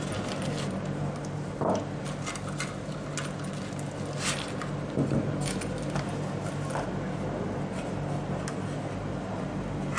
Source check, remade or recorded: recorded